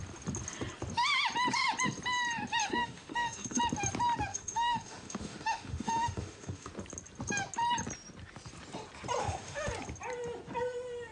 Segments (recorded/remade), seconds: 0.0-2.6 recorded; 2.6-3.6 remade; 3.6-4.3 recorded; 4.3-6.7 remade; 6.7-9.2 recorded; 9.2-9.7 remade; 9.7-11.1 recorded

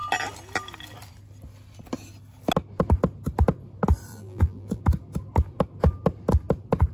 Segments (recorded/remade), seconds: 0.0-4.1 recorded; 4.1-4.8 remade; 4.8-6.9 recorded

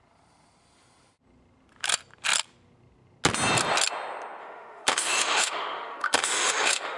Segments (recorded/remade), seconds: 0.0-4.4 recorded; 4.4-7.0 remade

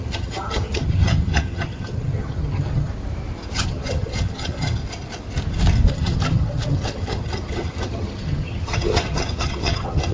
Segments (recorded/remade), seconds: 0.0-2.9 remade; 2.9-3.5 recorded; 3.5-4.8 remade; 4.8-5.9 recorded; 5.9-10.1 remade

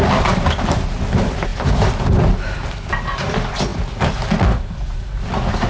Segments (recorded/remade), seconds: 0.0-5.7 recorded